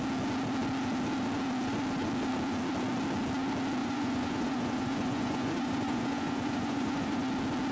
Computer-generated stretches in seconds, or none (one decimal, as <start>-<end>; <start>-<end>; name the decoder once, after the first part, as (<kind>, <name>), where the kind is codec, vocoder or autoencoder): 3.8-7.2 (vocoder, Vocos)